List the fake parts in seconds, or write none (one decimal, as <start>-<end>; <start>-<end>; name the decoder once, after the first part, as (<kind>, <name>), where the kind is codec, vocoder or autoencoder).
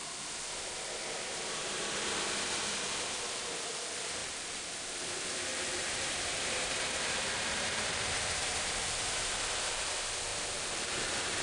4.2-4.7 (vocoder, BigVGAN v2); 5.5-9.8; 10.3-11.4